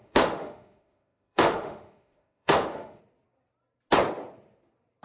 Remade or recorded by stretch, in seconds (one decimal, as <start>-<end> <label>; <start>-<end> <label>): 0.0-3.0 remade; 3.0-5.0 recorded